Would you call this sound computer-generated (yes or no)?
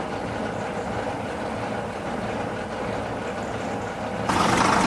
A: no